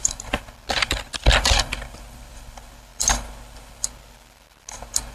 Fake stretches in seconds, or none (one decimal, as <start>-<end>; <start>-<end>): 0.0-5.1